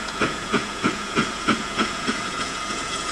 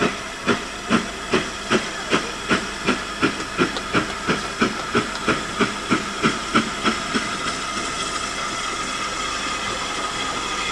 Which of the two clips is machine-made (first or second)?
first